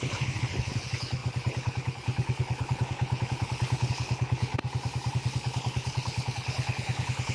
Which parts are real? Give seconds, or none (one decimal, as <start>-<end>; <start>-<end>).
4.5-5.1